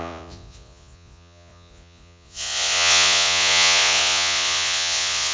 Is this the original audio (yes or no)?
no